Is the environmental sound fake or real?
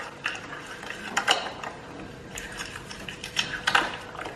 real